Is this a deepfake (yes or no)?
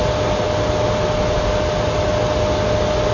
no